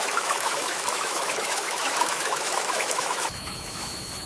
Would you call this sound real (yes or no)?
no